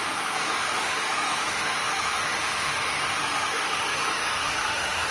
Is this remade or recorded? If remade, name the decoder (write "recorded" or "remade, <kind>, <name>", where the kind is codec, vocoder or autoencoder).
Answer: remade, autoencoder, DAC-VAE